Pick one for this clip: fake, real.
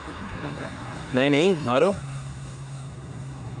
fake